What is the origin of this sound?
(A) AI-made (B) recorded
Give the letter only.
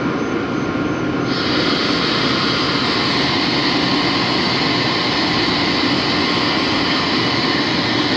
B